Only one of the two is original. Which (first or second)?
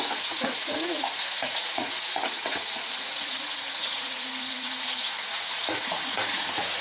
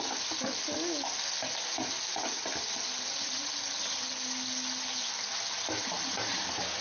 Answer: second